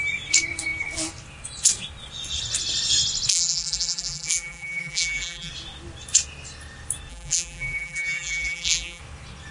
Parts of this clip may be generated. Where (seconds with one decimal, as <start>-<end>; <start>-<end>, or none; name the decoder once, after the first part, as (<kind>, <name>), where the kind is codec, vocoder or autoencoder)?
3.3-5.5 (vocoder, BigVGAN v2); 7.1-9.0